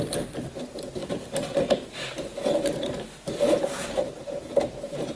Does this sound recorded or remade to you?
recorded